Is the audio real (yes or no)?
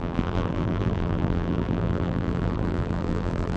no